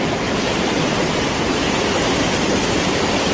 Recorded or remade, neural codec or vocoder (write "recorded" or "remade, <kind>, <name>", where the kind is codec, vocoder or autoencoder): recorded